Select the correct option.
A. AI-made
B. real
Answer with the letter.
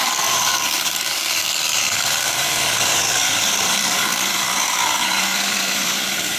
A